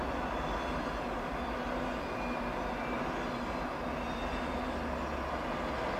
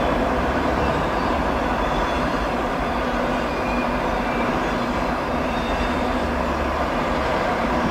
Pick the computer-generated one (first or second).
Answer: second